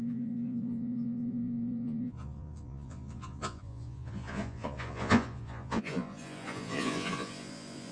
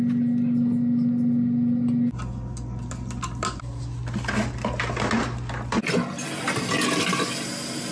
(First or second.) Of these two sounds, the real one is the second